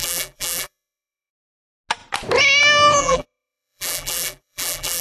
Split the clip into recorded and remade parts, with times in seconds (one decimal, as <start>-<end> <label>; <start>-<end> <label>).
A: 0.0-1.3 remade; 1.3-3.0 recorded; 3.0-5.0 remade